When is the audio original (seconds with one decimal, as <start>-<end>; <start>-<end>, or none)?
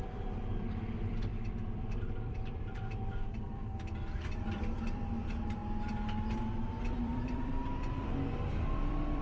5.6-6.8